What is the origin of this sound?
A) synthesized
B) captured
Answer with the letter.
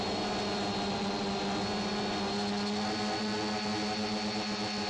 B